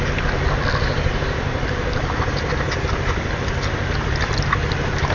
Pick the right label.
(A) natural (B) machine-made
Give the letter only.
A